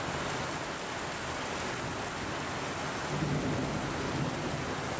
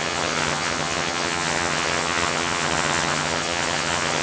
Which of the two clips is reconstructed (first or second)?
second